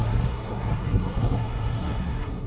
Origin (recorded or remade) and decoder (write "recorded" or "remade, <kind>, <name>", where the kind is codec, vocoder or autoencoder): remade, codec, SNAC